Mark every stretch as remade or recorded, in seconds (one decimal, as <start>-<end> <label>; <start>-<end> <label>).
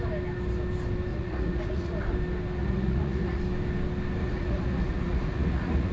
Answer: 0.0-1.1 recorded; 1.1-2.1 remade; 2.1-2.6 recorded; 2.6-3.4 remade; 3.4-4.2 recorded; 4.2-5.9 remade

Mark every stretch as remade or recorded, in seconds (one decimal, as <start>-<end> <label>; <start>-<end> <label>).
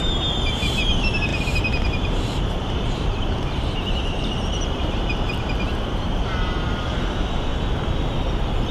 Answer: 0.0-7.5 remade; 7.5-8.7 recorded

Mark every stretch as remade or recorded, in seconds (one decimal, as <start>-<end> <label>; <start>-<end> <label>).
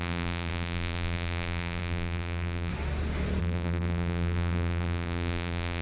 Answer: 0.0-2.7 remade; 2.7-3.4 recorded; 3.4-5.8 remade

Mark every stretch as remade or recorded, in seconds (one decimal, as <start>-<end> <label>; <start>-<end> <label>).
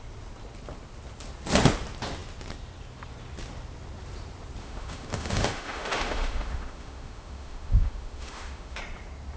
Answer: 0.0-4.6 recorded; 4.6-8.8 remade; 8.8-9.4 recorded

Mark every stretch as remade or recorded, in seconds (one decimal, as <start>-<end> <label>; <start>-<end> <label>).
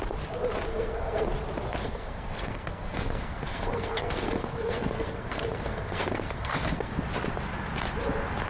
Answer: 0.0-0.7 recorded; 0.7-1.3 remade; 1.3-1.8 recorded; 1.8-6.9 remade; 6.9-8.5 recorded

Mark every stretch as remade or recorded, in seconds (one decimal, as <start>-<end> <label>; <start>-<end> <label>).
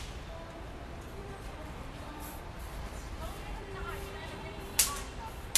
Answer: 0.0-1.2 recorded; 1.2-4.6 remade; 4.6-5.6 recorded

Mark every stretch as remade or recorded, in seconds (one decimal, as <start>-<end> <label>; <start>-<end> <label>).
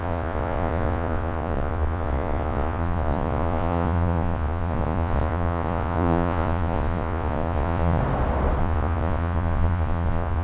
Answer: 0.0-8.0 remade; 8.0-8.6 recorded; 8.6-10.4 remade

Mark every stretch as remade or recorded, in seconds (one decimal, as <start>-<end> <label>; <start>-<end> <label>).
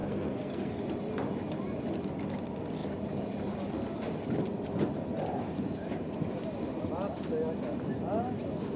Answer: 0.0-0.8 remade; 0.8-8.8 recorded